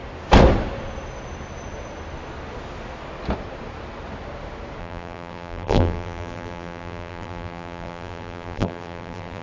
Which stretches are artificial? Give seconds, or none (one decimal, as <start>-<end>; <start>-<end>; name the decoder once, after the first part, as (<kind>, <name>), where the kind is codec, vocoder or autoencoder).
4.8-9.4 (vocoder, BigVGAN v2)